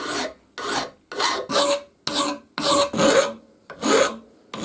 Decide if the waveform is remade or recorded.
recorded